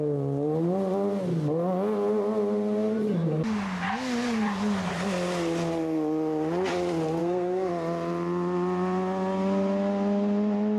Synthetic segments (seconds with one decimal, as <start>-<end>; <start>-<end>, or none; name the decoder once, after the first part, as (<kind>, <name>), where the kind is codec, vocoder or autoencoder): 7.2-7.7 (codec, SNAC)